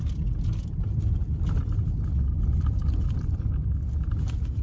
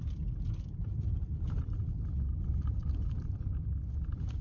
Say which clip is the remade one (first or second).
second